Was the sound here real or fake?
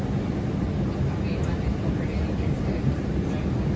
real